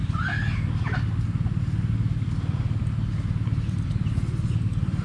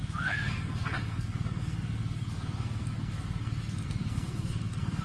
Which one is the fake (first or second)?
second